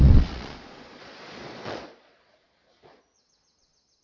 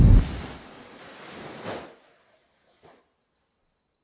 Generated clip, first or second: first